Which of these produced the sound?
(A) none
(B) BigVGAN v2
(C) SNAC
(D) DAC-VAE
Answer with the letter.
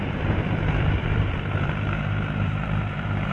B